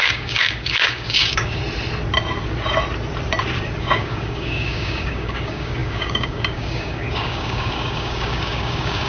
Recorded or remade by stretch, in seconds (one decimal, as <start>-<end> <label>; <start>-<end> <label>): 0.0-1.6 remade; 1.6-3.8 recorded; 3.8-9.1 remade